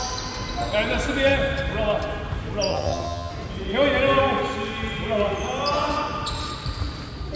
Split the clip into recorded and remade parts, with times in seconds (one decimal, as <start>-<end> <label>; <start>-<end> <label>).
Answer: 0.0-2.7 recorded; 2.7-3.3 remade; 3.3-7.4 recorded